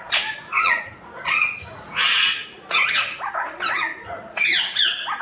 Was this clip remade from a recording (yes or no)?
yes